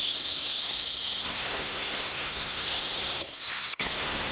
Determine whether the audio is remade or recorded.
remade